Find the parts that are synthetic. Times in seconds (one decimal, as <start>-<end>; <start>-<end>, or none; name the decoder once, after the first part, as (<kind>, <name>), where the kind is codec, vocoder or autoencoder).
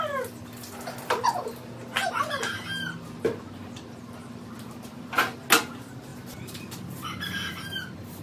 2.0-2.6 (vocoder, BigVGAN v2); 6.1-6.7